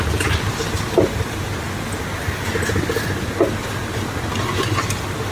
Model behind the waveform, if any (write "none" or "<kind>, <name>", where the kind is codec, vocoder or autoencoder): none